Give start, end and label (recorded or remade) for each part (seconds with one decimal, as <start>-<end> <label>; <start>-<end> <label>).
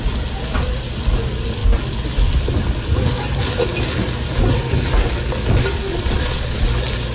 0.0-5.9 recorded; 5.9-6.6 remade; 6.6-7.1 recorded